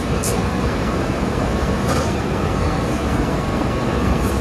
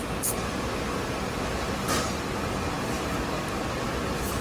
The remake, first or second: first